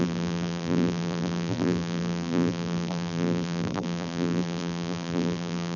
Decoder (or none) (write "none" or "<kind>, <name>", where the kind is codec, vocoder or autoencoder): vocoder, BigVGAN v2